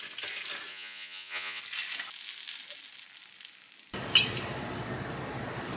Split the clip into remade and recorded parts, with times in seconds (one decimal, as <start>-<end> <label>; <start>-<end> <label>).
0.0-0.7 recorded; 0.7-1.6 remade; 1.6-5.8 recorded